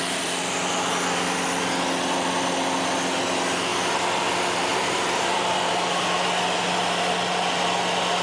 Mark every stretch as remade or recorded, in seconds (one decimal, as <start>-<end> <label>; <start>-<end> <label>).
0.0-4.7 recorded; 4.7-5.7 remade; 5.7-8.2 recorded